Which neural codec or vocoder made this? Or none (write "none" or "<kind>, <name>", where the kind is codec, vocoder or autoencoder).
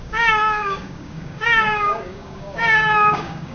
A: codec, DAC